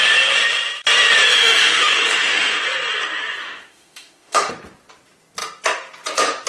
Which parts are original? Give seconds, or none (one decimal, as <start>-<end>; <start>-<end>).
0.0-1.3; 2.6-3.4; 4.5-6.5